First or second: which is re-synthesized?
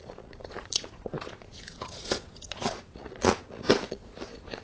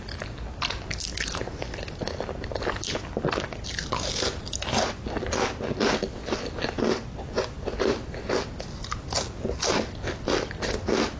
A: first